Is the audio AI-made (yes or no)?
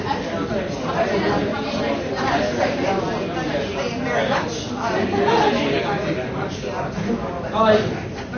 no